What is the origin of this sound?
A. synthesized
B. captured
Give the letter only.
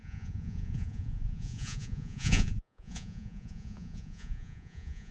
A